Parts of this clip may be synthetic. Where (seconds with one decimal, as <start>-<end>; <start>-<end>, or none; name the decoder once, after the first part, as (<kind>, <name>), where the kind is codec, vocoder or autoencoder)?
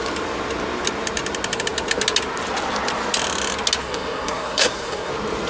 3.8-5.1 (codec, SNAC)